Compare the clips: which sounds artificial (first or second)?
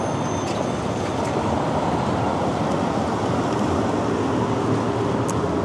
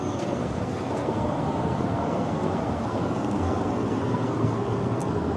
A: second